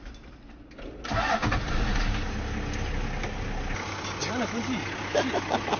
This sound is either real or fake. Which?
real